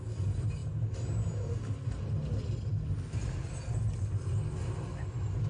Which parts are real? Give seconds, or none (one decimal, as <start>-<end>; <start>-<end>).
0.0-5.5